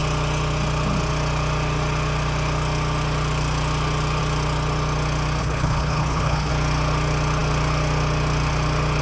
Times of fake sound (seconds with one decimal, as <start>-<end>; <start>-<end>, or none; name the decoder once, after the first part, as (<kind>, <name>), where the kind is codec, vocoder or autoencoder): 5.4-6.5 (codec, HILCodec)